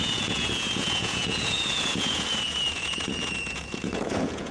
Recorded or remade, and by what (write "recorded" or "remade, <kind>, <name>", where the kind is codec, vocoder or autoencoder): remade, vocoder, Vocos